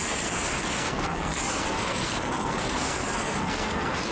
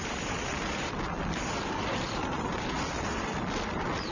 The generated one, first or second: first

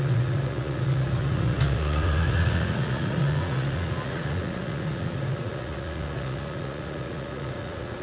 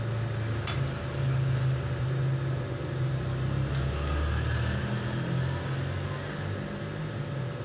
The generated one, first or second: first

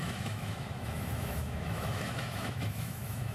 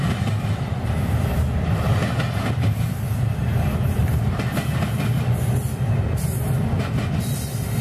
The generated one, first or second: first